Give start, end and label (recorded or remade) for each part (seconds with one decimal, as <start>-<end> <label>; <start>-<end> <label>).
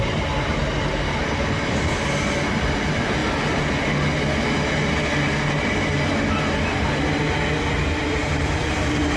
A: 0.0-9.2 recorded